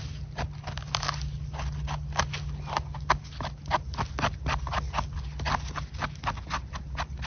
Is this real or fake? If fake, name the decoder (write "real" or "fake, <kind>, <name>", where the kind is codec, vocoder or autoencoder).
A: real